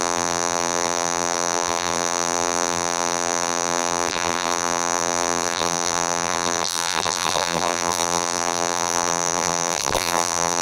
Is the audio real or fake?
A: fake